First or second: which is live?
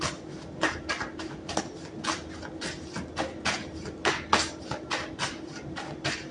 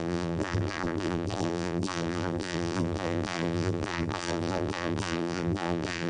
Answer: first